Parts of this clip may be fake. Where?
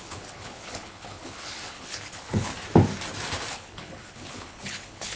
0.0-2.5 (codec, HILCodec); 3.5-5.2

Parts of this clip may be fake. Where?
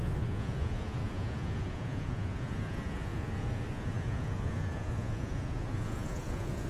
0.0-6.7 (vocoder, Vocos)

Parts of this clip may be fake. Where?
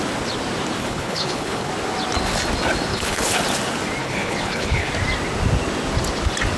0.8-1.7 (codec, HILCodec); 2.9-3.4; 4.0-4.9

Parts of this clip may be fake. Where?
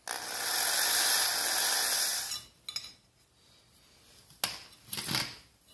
none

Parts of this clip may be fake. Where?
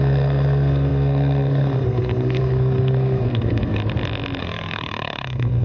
0.0-3.8 (codec, SNAC); 4.4-5.6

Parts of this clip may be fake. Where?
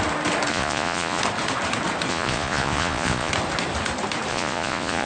0.5-1.2 (vocoder, Vocos); 2.1-3.3; 4.3-5.1